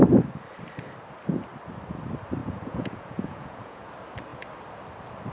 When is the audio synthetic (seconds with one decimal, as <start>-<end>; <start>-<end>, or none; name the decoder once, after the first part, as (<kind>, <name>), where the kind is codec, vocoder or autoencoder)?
2.4-3.9 (vocoder, Vocos)